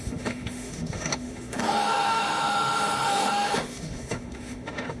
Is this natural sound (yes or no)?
no